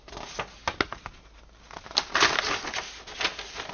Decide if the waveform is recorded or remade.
recorded